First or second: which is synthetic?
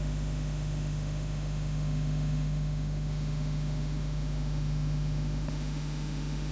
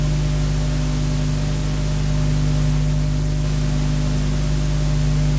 first